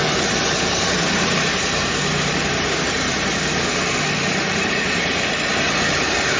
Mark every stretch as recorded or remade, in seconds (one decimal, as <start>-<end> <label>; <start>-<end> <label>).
0.0-5.1 remade; 5.1-5.9 recorded; 5.9-6.4 remade